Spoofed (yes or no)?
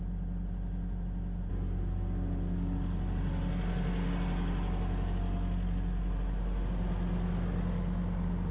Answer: no